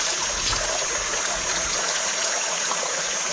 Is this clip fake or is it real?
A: fake